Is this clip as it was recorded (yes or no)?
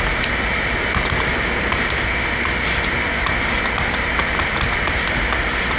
no